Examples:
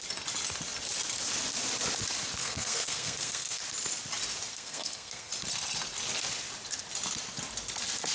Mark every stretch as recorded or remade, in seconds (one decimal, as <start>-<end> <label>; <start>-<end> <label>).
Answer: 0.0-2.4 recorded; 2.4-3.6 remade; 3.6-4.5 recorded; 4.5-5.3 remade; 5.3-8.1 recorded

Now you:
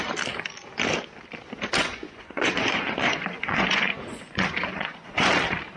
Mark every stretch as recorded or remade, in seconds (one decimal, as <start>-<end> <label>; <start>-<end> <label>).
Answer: 0.0-1.8 recorded; 1.8-5.3 remade; 5.3-5.8 recorded

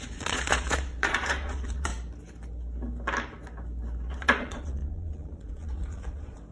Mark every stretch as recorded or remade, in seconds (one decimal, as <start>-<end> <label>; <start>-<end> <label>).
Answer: 0.0-1.9 remade; 1.9-4.1 recorded; 4.1-6.5 remade

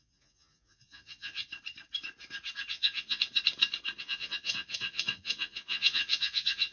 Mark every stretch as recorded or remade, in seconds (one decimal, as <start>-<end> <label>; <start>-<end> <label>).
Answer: 0.0-1.4 remade; 1.4-2.7 recorded; 2.7-3.3 remade; 3.3-4.0 recorded; 4.0-6.7 remade